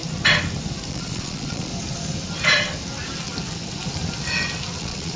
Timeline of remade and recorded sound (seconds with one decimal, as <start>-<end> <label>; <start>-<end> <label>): 0.0-0.9 recorded; 0.9-1.7 remade; 1.7-4.8 recorded; 4.8-5.2 remade